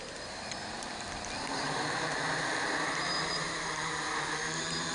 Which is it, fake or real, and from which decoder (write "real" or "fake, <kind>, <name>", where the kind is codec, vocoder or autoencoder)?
fake, vocoder, BigVGAN v2